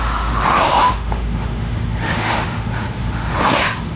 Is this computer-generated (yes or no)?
yes